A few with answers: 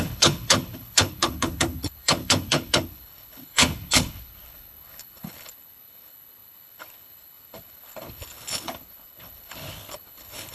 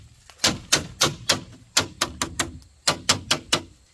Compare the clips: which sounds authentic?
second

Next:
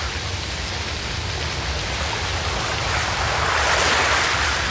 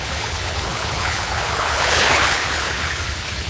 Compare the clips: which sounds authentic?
first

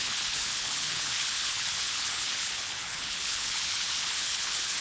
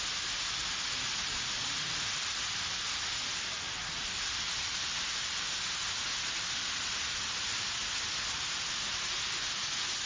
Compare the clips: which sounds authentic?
second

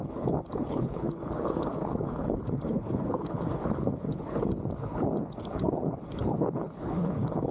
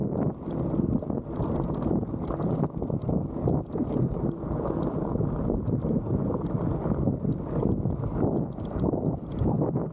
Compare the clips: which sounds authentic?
second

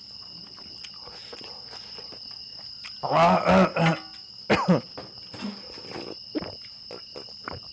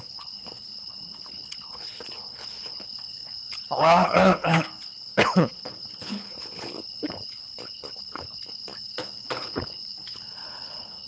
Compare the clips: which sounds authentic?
first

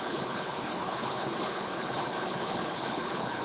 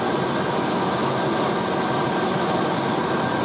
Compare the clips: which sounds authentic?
second